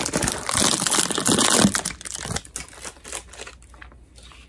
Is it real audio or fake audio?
real